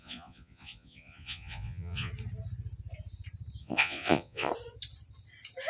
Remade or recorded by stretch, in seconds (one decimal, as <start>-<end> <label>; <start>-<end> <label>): 0.0-2.1 remade; 2.1-3.6 recorded; 3.6-4.5 remade; 4.5-5.7 recorded